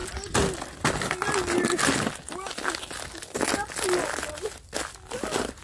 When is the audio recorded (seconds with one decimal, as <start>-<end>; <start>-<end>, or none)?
0.0-5.6